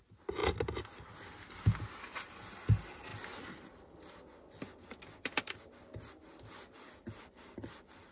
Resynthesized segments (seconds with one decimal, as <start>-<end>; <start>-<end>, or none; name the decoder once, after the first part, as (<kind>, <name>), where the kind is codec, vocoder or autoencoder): none